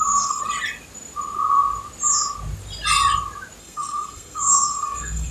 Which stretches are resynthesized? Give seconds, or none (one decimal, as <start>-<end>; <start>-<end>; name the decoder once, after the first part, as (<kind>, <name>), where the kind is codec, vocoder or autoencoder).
0.0-0.4 (codec, SNAC); 3.6-5.3